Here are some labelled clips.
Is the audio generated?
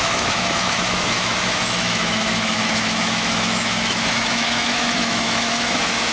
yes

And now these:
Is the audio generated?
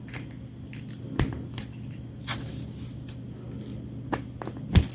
no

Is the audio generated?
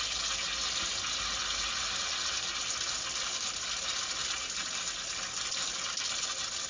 no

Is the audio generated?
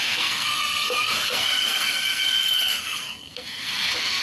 yes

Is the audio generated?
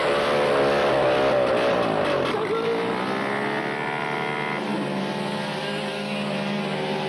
no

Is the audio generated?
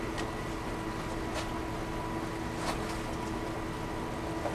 no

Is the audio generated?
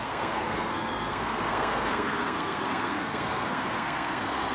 yes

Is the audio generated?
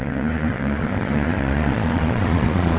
yes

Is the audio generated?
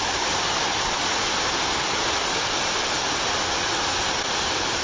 no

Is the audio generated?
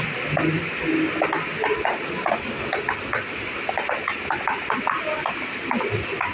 no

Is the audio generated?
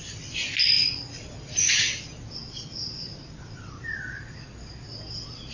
no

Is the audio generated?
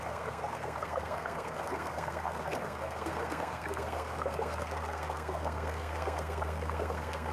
yes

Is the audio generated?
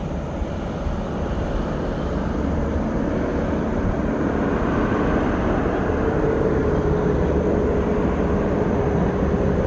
no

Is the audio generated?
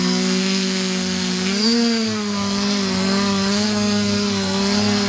yes